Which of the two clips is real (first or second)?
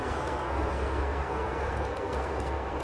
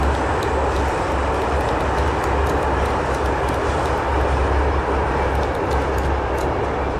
second